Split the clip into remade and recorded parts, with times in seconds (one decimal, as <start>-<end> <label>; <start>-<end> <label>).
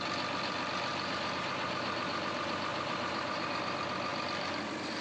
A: 0.0-0.9 recorded; 0.9-1.7 remade; 1.7-2.7 recorded; 2.7-3.5 remade; 3.5-5.0 recorded